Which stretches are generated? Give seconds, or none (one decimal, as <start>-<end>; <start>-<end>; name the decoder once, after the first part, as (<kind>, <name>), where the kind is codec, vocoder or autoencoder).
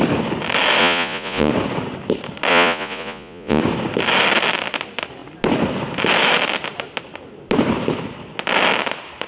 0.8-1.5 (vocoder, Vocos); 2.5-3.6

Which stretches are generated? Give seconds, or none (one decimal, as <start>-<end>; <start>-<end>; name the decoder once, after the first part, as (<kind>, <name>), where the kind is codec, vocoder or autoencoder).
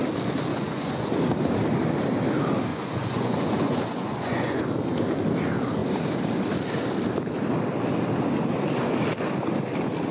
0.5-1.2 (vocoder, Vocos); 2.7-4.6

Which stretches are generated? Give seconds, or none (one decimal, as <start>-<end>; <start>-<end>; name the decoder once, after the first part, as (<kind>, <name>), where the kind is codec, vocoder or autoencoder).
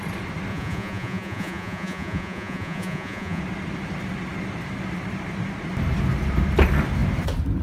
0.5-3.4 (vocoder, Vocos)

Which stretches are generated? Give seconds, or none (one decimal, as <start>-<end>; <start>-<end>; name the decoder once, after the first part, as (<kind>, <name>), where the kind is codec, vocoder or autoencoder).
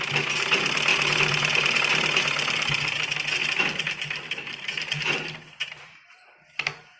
none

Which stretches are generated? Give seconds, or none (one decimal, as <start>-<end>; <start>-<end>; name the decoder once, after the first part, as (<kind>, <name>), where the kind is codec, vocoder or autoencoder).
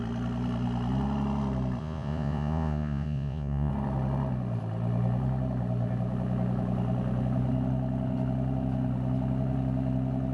1.8-3.7 (vocoder, Vocos)